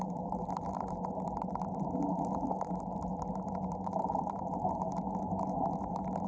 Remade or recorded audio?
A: remade